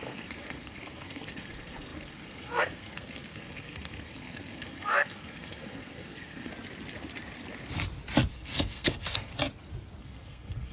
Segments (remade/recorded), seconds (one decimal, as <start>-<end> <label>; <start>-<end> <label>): 0.0-6.5 remade; 6.5-8.3 recorded; 8.3-9.3 remade; 9.3-10.0 recorded; 10.0-10.7 remade